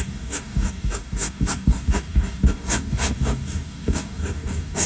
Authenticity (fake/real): fake